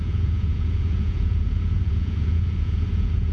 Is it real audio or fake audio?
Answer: fake